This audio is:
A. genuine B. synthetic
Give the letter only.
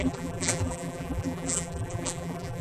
B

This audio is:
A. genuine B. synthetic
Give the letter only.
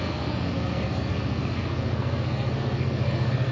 B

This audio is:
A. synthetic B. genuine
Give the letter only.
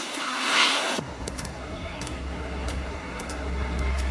A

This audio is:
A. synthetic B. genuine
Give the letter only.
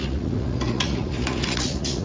A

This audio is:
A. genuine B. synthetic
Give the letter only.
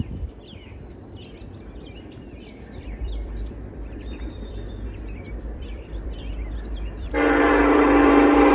B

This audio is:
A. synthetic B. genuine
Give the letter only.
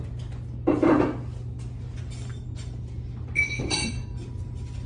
B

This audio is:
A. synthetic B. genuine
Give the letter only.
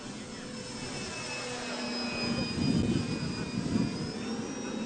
B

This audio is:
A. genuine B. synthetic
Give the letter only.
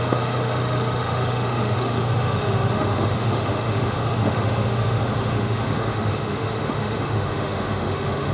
B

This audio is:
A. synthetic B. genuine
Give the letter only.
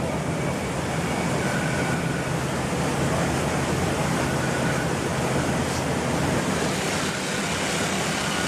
B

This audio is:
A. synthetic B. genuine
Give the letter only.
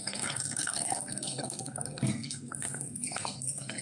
A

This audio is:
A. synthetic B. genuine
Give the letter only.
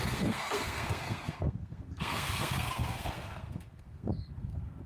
A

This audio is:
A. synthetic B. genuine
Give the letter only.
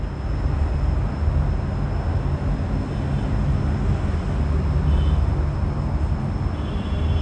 B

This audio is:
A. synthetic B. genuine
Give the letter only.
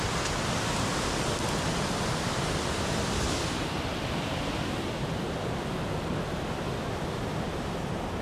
B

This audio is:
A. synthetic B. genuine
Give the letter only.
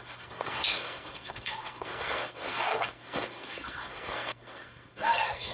A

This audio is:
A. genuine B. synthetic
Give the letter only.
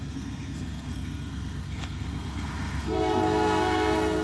B